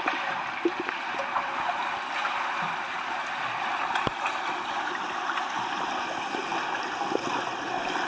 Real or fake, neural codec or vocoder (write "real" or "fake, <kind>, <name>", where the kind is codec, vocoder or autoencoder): real